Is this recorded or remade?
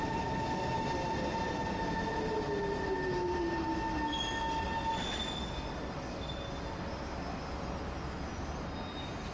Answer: recorded